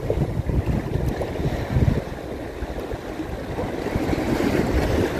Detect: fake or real real